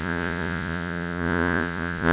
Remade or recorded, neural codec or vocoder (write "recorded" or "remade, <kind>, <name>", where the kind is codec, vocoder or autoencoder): remade, vocoder, Vocos